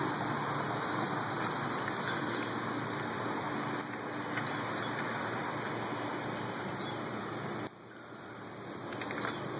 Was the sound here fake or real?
real